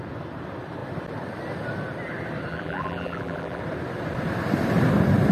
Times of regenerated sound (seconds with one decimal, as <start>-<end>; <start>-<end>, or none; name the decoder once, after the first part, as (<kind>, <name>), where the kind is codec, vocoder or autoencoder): 2.5-3.6 (vocoder, BigVGAN v2)